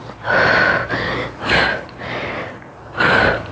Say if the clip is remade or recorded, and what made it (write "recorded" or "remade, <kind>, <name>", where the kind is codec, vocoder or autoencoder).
recorded